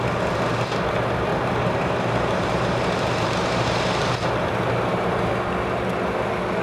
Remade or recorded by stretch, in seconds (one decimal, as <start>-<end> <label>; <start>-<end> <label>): 0.0-1.3 recorded; 1.3-5.3 remade; 5.3-6.6 recorded